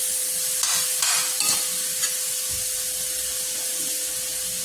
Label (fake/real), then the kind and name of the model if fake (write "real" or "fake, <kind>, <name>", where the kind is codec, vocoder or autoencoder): real